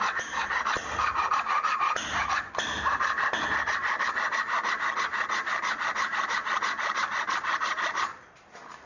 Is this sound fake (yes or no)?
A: no